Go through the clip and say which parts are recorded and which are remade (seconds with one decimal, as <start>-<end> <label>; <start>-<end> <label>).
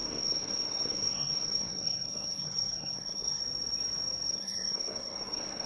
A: 0.0-3.4 remade; 3.4-4.3 recorded; 4.3-5.7 remade